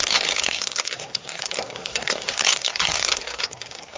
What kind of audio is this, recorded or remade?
remade